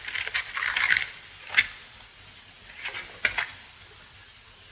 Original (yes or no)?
yes